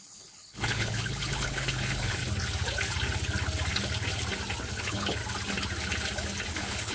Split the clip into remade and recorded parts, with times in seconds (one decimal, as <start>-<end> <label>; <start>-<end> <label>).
0.0-2.2 remade; 2.2-4.7 recorded; 4.7-5.2 remade; 5.2-6.5 recorded; 6.5-6.9 remade